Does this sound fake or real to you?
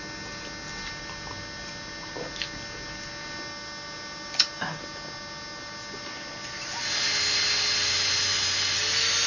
real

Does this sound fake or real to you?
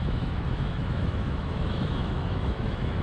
fake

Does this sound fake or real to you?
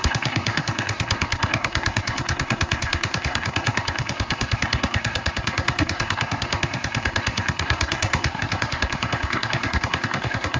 fake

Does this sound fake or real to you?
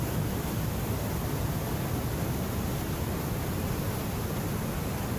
real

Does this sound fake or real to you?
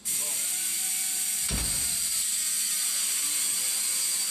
real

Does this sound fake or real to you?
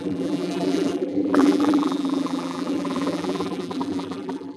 fake